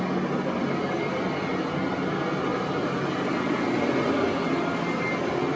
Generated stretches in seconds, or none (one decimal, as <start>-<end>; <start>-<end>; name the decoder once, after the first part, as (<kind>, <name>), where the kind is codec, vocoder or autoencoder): none